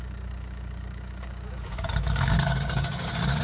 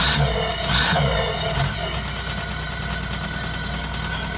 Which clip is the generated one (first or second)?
first